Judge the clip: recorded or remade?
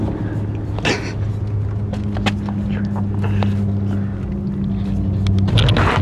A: recorded